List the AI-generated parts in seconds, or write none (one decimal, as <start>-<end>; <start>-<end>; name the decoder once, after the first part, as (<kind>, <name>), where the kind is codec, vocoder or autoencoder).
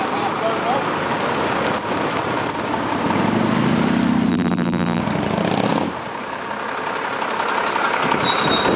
4.3-5.0 (vocoder, BigVGAN v2)